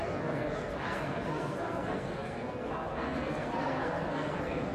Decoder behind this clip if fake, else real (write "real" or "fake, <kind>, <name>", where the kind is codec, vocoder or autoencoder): fake, codec, SNAC